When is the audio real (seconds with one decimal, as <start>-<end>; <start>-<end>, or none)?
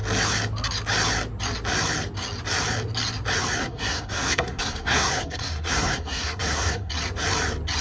0.0-3.6; 6.9-7.8